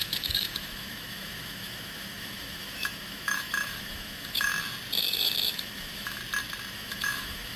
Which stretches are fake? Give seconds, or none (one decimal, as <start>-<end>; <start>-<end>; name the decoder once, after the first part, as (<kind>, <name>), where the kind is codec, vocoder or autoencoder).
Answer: 0.0-4.5 (autoencoder, DAC-VAE); 5.0-6.2; 6.7-7.6